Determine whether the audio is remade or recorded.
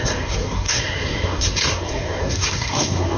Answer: remade